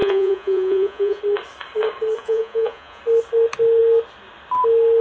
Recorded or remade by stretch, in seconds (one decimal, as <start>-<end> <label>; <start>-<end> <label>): 0.0-1.2 remade; 1.2-2.2 recorded; 2.2-3.0 remade; 3.0-5.0 recorded